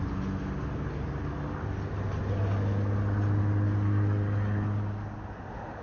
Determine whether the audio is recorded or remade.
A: recorded